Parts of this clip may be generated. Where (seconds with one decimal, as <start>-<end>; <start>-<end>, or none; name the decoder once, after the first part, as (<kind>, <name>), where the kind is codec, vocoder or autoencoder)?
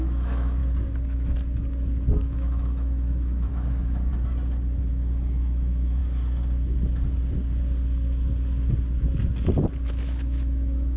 0.0-0.6 (autoencoder, DAC-VAE); 2.2-4.1; 4.9-6.0; 9.9-11.0